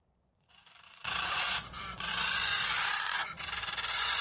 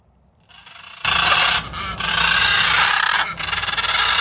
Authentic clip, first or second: second